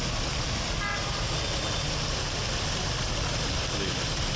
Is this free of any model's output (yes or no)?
yes